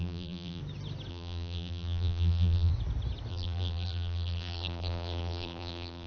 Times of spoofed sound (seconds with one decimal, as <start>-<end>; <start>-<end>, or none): 0.0-0.6; 1.1-2.7; 3.3-6.1